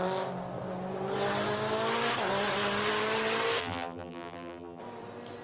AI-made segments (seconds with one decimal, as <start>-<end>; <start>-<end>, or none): 3.6-4.8